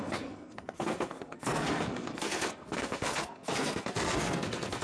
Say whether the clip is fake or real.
fake